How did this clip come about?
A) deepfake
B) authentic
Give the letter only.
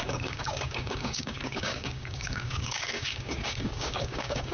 A